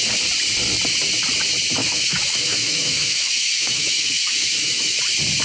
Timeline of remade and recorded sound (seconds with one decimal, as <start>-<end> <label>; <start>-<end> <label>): 0.0-1.8 recorded; 1.8-5.0 remade; 5.0-5.4 recorded